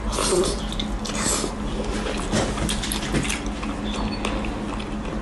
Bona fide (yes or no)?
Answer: yes